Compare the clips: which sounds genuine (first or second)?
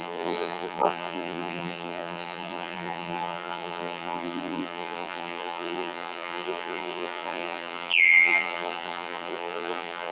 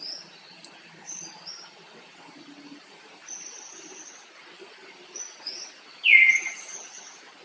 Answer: second